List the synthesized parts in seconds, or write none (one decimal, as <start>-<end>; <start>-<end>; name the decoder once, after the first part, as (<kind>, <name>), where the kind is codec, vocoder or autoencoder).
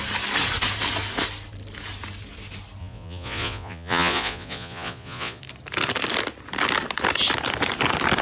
2.8-5.4 (vocoder, Vocos)